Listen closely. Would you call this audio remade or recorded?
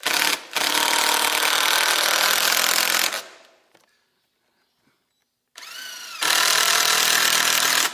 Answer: recorded